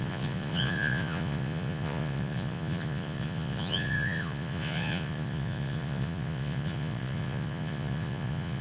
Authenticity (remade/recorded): remade